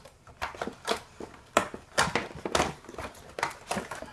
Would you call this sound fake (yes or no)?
yes